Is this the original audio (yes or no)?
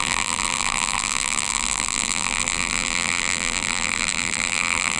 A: no